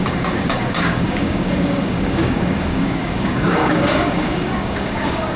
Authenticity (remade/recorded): remade